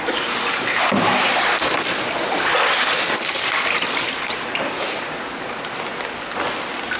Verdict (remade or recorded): recorded